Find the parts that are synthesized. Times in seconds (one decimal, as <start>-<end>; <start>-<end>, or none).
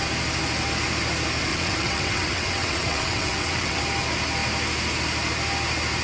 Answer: 1.5-3.8